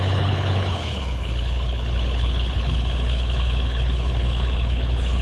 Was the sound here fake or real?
fake